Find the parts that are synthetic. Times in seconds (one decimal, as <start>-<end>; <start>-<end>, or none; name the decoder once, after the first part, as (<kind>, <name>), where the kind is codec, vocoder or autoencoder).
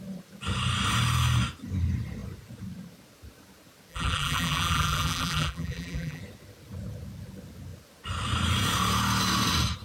3.9-6.2 (vocoder, BigVGAN v2)